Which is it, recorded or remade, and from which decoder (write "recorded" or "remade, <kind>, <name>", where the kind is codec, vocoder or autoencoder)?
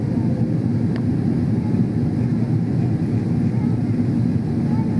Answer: recorded